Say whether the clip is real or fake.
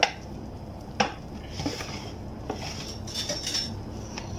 real